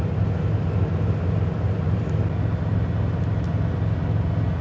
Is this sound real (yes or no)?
yes